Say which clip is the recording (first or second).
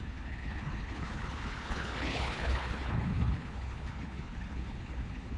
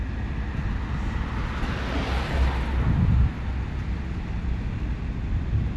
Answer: second